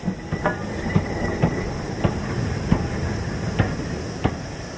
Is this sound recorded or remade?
recorded